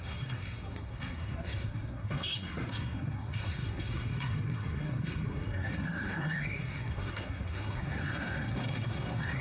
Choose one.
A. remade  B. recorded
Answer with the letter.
A